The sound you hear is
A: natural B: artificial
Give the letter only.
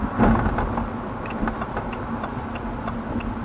B